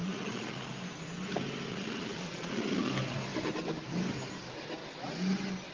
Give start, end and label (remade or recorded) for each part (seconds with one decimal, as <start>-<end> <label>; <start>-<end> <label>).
0.0-0.7 remade; 0.7-1.7 recorded; 1.7-2.9 remade; 2.9-5.7 recorded